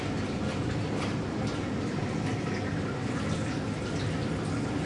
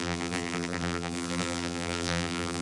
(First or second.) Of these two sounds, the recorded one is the first